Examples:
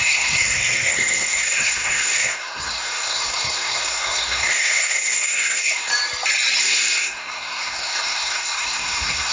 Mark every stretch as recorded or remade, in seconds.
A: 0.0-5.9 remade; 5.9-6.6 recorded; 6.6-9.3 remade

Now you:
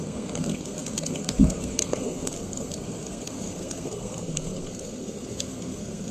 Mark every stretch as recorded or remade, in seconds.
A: 0.0-6.1 remade

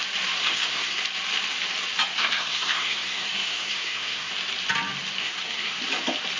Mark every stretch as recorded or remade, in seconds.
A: 0.0-0.4 recorded; 0.4-1.0 remade; 1.0-2.1 recorded; 2.1-4.3 remade; 4.3-5.2 recorded; 5.2-5.7 remade; 5.7-6.4 recorded

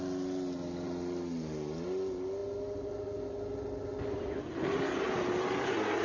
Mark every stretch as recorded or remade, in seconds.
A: 0.0-6.0 recorded